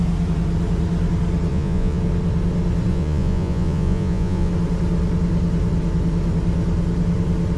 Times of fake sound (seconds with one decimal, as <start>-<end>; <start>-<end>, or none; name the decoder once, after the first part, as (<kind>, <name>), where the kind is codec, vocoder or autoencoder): 1.5-2.0 (vocoder, Vocos); 2.9-4.5